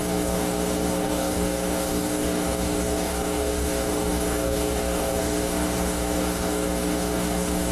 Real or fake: fake